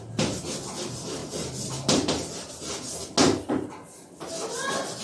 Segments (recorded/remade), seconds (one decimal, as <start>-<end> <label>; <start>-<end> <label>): 0.0-5.0 recorded